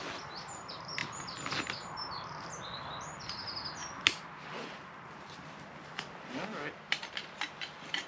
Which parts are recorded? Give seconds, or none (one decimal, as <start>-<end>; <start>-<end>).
3.8-5.9

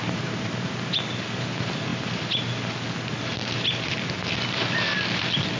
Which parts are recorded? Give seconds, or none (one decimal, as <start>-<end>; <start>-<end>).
0.0-5.6